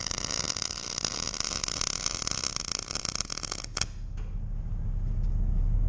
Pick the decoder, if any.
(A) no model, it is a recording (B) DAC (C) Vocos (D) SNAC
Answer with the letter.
A